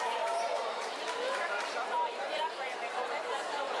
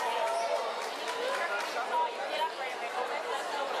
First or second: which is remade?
first